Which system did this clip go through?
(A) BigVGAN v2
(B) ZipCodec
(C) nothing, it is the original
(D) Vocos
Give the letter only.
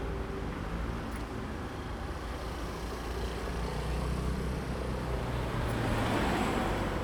C